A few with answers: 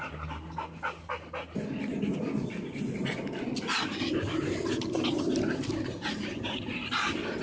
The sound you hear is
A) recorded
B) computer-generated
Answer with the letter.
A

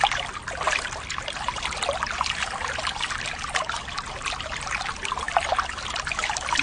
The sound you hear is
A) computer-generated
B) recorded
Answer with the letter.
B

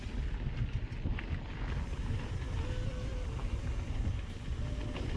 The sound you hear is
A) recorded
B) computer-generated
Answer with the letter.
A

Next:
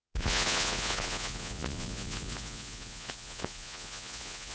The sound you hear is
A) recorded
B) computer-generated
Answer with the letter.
B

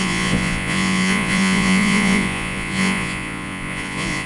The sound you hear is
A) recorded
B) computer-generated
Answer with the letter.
B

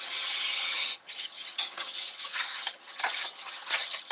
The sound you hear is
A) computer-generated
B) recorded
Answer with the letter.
A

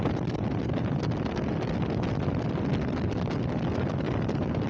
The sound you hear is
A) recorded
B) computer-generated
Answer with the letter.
A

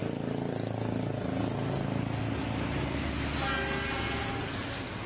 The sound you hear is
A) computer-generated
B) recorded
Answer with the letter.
B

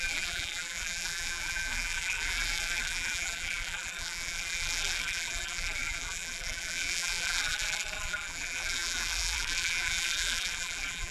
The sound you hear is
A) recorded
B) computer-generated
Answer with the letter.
B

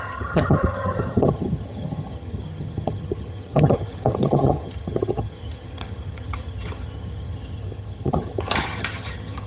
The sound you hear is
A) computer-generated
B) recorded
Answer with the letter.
A